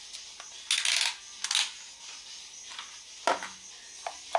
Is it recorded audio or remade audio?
recorded